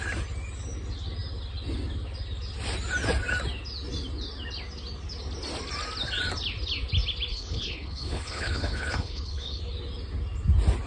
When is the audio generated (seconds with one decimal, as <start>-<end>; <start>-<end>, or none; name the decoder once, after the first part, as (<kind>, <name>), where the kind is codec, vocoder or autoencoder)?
7.3-9.6 (codec, HILCodec)

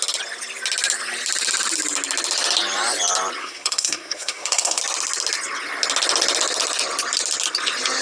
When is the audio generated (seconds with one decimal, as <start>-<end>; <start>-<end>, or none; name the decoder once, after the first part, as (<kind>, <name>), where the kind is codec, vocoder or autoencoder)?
3.4-4.8 (codec, SNAC)

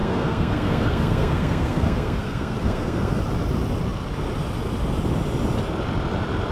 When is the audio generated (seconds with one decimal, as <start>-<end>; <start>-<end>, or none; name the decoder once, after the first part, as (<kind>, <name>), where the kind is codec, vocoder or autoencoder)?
0.0-3.2 (codec, SNAC)

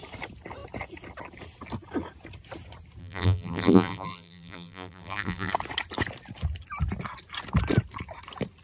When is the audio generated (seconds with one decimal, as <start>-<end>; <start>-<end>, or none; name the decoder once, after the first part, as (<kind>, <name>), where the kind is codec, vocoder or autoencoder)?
3.0-5.5 (vocoder, BigVGAN v2)

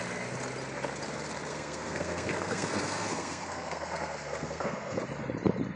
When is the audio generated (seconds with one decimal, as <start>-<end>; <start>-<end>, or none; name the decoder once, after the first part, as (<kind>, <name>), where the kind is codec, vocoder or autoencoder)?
1.5-5.0 (codec, SNAC)

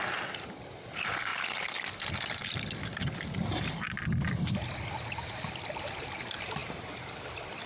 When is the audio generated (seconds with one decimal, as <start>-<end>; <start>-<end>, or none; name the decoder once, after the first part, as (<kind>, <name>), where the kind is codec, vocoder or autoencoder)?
none